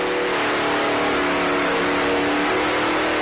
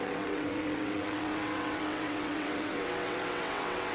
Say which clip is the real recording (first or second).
first